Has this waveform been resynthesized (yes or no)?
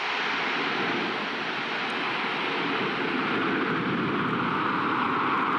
yes